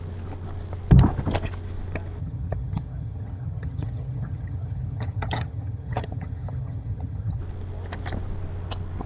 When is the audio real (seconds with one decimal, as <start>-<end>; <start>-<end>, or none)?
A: 0.0-2.2; 7.4-9.1